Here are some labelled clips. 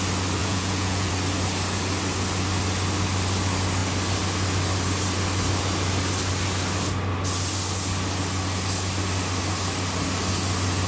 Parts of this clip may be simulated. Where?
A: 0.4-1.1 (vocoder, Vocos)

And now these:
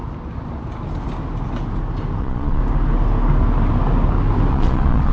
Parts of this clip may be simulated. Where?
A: 2.2-2.6 (vocoder, Vocos); 4.5-5.1

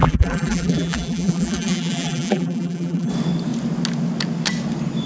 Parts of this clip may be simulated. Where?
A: 0.0-3.1 (vocoder, BigVGAN v2)

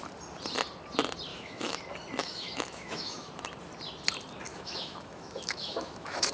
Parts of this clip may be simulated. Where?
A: 1.3-1.8 (autoencoder, DAC-VAE); 2.2-3.3; 4.5-6.3